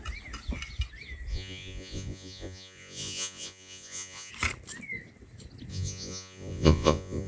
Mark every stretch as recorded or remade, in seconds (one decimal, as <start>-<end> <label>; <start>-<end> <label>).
0.0-1.3 recorded; 1.3-4.3 remade; 4.3-5.7 recorded; 5.7-7.3 remade